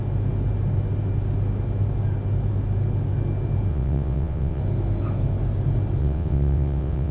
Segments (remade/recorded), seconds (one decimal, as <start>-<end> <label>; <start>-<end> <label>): 0.0-3.7 recorded; 3.7-4.6 remade; 4.6-6.0 recorded; 6.0-7.1 remade